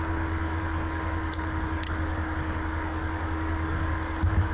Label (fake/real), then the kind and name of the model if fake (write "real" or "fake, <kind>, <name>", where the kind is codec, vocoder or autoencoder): fake, codec, DAC